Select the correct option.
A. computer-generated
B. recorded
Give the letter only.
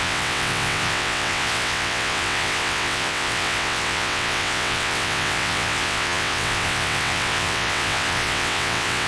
A